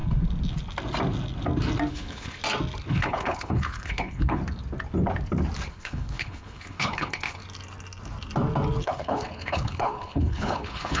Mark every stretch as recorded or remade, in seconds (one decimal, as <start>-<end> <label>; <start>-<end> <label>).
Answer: 0.0-1.9 recorded; 1.9-2.4 remade; 2.4-2.9 recorded; 2.9-4.4 remade; 4.4-5.7 recorded; 5.7-7.4 remade; 7.4-8.8 recorded; 8.8-11.0 remade